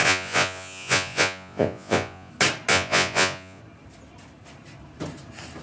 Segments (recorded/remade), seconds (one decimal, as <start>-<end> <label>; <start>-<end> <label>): 0.0-2.3 remade; 2.3-2.7 recorded; 2.7-3.6 remade; 3.6-5.6 recorded